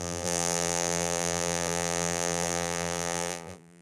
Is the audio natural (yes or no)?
no